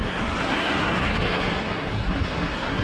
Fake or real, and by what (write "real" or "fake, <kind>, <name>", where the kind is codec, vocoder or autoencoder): fake, codec, SNAC